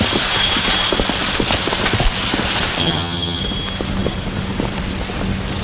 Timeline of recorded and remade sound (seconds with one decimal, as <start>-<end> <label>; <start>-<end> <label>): 0.0-2.8 recorded; 2.8-3.4 remade; 3.4-5.6 recorded